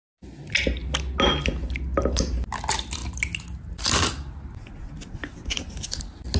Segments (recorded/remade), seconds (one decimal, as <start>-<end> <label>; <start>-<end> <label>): 0.0-6.4 recorded